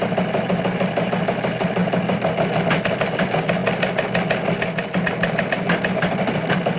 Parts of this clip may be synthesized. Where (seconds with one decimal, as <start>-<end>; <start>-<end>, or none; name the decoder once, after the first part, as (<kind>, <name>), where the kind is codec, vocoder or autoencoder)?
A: none